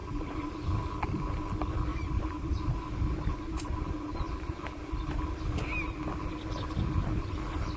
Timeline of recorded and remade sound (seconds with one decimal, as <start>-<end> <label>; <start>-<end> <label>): 0.0-1.5 remade; 1.5-1.9 recorded; 1.9-5.4 remade; 5.4-7.8 recorded